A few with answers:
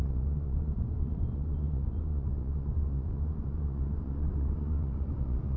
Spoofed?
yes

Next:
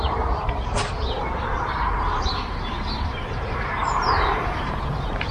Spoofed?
yes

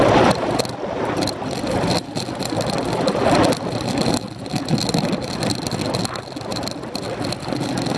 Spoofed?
no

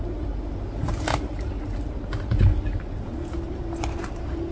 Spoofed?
no